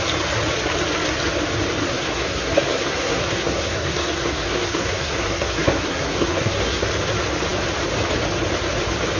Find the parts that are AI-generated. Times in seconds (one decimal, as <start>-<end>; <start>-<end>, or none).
1.8-6.9